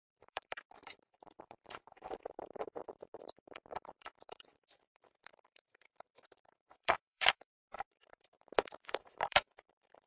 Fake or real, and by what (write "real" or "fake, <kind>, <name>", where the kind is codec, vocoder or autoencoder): fake, vocoder, BigVGAN v2